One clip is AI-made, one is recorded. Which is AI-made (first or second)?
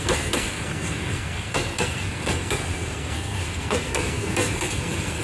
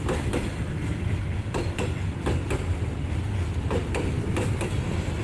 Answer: first